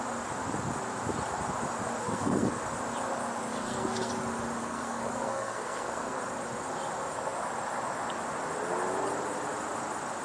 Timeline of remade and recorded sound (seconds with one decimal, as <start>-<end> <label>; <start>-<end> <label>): 0.0-2.0 recorded; 2.0-2.6 remade; 2.6-3.5 recorded; 3.5-4.1 remade; 4.1-4.6 recorded; 4.6-6.2 remade; 6.2-10.2 recorded

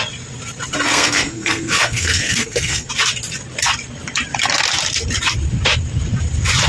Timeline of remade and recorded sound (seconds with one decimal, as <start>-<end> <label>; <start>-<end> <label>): 0.0-0.9 recorded; 0.9-2.9 remade; 2.9-6.7 recorded

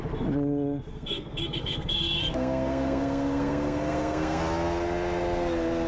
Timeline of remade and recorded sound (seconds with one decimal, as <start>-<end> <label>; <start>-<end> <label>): 0.0-0.9 recorded; 0.9-4.4 remade; 4.4-5.9 recorded